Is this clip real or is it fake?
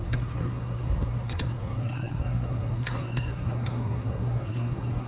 fake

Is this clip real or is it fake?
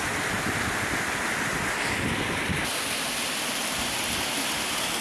real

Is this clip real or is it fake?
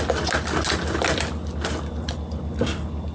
real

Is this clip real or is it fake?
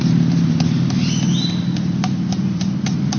real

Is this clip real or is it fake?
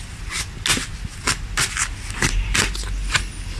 real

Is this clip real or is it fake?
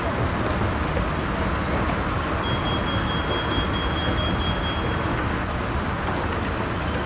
real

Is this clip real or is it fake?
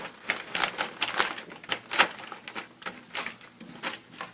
real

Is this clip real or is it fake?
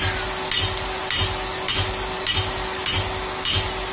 real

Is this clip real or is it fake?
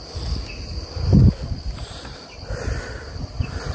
real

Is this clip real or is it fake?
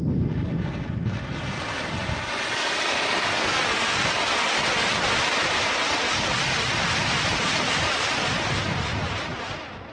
real